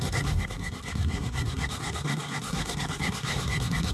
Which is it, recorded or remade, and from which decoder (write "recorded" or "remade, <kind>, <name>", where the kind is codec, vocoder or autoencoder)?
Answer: remade, codec, SNAC